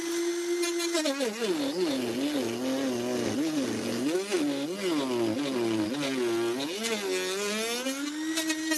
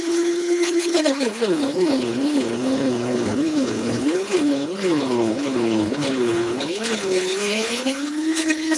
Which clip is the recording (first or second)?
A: first